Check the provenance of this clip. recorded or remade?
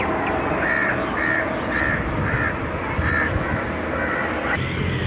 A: recorded